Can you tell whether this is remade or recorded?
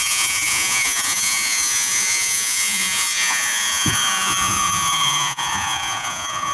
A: remade